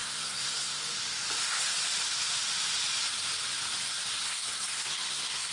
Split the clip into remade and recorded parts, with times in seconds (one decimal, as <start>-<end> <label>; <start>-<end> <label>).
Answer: 0.0-0.8 remade; 0.8-4.2 recorded; 4.2-5.5 remade